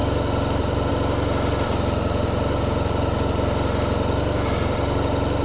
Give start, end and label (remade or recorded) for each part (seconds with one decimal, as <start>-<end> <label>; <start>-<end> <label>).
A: 0.0-5.4 recorded